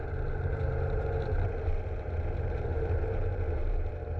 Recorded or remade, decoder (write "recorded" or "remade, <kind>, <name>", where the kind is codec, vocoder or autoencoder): remade, vocoder, BigVGAN v2